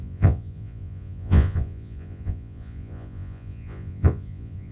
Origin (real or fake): fake